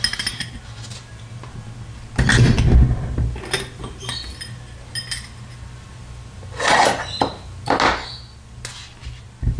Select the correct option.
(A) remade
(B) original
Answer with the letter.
B